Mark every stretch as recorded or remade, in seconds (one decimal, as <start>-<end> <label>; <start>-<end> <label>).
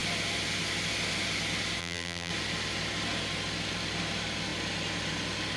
0.0-1.8 recorded; 1.8-2.3 remade; 2.3-5.6 recorded